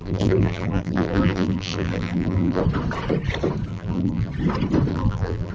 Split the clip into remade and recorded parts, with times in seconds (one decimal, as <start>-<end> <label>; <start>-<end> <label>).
0.0-2.6 remade; 2.6-3.7 recorded; 3.7-4.3 remade; 4.3-4.9 recorded; 4.9-5.5 remade